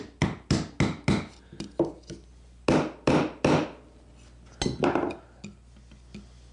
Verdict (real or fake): real